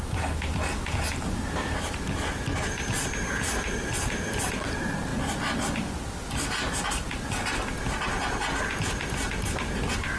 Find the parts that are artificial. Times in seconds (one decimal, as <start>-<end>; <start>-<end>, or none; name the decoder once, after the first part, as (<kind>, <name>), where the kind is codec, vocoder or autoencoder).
none